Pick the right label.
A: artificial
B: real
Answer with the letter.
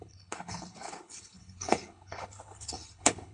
A